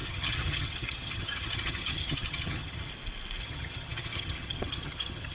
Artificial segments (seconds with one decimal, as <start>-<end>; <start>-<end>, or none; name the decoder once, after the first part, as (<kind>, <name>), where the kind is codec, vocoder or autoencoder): 0.0-2.9 (vocoder, HiFi-GAN); 3.4-5.3

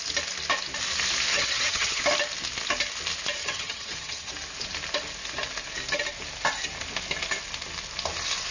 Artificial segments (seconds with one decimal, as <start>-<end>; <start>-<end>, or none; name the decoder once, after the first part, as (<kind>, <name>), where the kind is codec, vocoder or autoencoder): 1.3-2.0 (vocoder, HiFi-GAN); 3.4-4.3

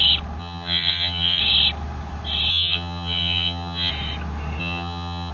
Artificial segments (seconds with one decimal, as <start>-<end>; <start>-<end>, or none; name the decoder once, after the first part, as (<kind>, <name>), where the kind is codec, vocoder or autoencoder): 0.4-1.4 (vocoder, HiFi-GAN); 2.5-3.9; 4.6-5.3

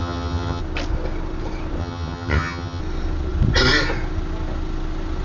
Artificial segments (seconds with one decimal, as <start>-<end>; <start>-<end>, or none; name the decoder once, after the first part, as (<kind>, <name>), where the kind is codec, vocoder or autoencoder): 0.0-0.6 (vocoder, HiFi-GAN); 1.8-2.8

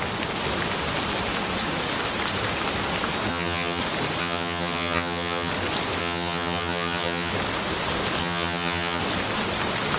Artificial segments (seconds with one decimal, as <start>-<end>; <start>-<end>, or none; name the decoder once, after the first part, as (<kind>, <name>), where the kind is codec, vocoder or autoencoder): 3.3-3.8 (vocoder, HiFi-GAN); 4.2-5.5; 6.0-7.3; 8.2-9.0

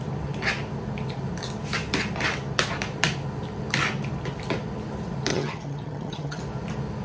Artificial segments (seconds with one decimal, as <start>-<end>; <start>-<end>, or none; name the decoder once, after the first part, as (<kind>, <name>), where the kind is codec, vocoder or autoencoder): 5.3-6.4 (vocoder, HiFi-GAN)

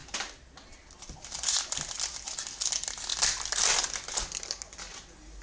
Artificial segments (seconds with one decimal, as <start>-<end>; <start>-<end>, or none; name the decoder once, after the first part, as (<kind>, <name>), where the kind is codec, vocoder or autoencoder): none

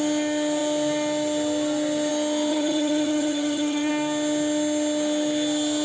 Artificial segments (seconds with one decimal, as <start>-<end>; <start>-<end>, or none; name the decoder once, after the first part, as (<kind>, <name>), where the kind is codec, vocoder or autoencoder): 2.5-3.9 (vocoder, HiFi-GAN)